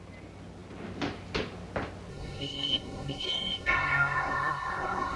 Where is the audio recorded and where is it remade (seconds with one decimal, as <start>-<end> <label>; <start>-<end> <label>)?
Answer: 0.0-2.1 recorded; 2.1-5.2 remade